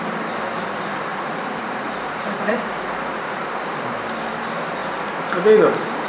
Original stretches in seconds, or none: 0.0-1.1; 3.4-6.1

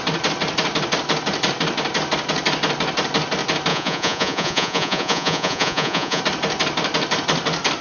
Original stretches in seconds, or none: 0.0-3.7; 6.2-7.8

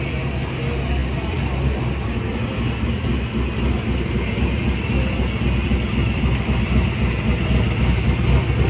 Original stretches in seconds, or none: 0.0-8.7